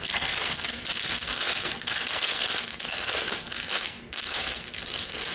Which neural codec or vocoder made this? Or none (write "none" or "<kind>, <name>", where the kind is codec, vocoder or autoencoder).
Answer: codec, SNAC